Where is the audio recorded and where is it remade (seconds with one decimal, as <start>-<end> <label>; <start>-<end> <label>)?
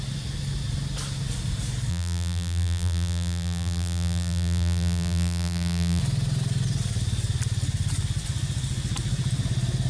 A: 0.0-1.9 recorded; 1.9-6.0 remade; 6.0-9.9 recorded